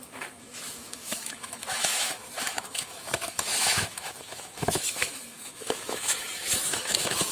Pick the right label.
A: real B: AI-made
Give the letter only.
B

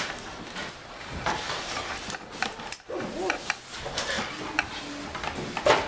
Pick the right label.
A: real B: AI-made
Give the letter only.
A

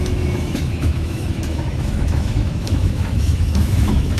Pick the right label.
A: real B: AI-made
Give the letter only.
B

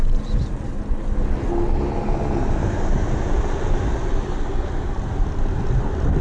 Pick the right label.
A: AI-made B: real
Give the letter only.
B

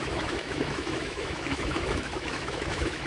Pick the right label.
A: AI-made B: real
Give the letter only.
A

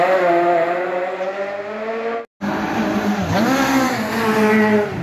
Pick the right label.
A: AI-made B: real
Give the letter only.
B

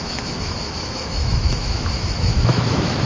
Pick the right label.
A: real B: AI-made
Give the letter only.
B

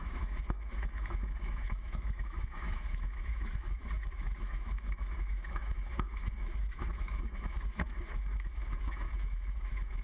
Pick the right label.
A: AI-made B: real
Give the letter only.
A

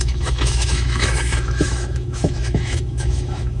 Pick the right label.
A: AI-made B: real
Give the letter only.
A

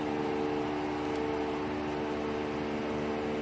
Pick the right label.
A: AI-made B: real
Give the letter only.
B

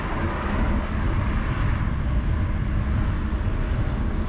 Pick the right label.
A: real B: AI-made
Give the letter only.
A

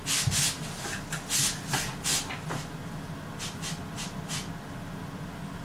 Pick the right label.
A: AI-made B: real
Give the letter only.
B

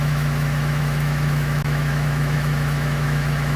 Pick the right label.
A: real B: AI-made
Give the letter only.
B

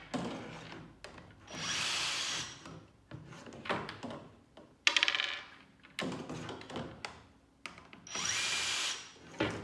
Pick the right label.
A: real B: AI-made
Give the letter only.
A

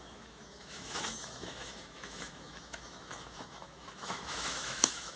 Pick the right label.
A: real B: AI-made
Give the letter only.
B